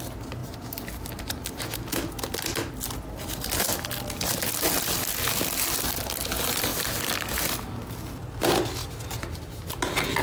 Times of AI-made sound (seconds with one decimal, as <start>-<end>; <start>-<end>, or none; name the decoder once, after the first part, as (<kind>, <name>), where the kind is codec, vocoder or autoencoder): none